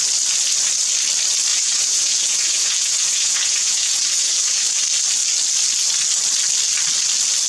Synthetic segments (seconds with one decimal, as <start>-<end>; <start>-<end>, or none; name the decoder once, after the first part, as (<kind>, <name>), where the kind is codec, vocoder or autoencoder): 1.5-4.8 (vocoder, Vocos)